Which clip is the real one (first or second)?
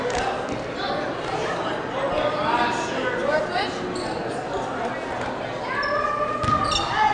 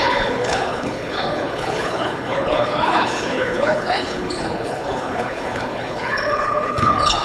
first